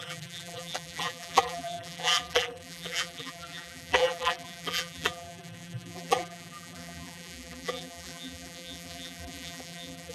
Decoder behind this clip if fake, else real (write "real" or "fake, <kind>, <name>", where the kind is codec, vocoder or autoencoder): fake, vocoder, BigVGAN v2